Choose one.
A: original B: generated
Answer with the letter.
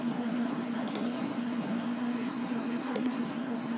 B